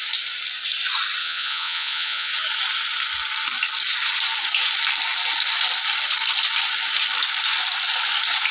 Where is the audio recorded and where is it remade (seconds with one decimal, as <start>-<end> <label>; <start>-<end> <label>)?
0.0-1.2 recorded; 1.2-2.3 remade; 2.3-8.5 recorded